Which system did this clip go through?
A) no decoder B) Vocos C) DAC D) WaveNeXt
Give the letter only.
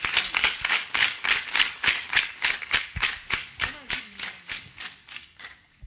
C